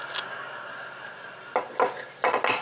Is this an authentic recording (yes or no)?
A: yes